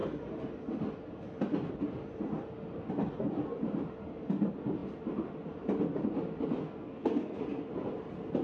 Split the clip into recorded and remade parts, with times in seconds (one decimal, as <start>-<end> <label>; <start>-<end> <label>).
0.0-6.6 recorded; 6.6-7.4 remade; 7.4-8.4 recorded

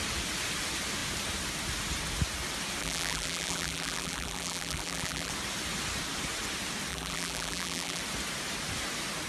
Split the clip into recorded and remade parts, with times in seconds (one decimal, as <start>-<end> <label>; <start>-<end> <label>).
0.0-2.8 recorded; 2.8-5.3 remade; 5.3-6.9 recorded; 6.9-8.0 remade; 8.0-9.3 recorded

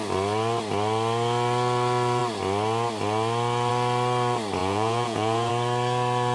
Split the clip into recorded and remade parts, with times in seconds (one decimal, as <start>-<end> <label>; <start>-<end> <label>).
0.0-4.6 recorded; 4.6-5.5 remade; 5.5-6.3 recorded